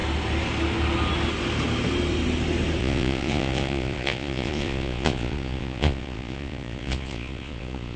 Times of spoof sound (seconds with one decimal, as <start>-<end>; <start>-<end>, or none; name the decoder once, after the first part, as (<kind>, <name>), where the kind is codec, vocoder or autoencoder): 2.8-8.0 (vocoder, Vocos)